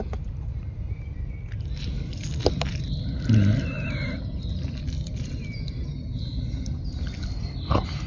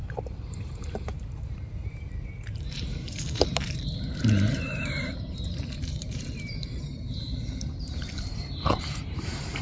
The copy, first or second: second